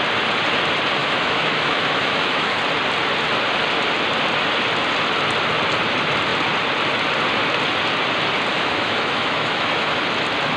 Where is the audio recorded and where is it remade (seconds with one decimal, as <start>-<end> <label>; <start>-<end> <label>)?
0.0-1.0 recorded; 1.0-2.6 remade; 2.6-8.5 recorded; 8.5-10.0 remade; 10.0-10.6 recorded